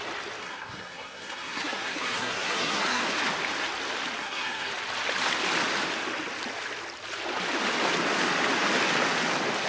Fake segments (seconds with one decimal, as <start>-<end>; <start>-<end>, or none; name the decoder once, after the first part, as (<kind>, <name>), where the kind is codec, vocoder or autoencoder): 0.4-3.0 (codec, SNAC); 4.2-4.7